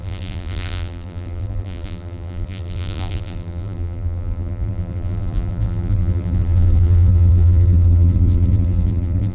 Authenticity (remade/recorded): remade